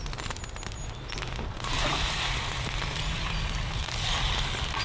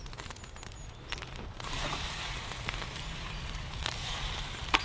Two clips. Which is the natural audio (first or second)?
first